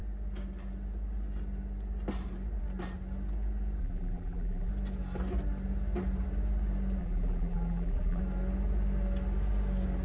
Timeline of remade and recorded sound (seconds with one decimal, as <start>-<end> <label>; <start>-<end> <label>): 0.0-3.8 recorded; 3.8-4.7 remade; 4.7-7.0 recorded; 7.0-8.2 remade; 8.2-10.0 recorded